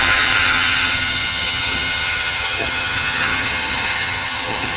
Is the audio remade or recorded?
remade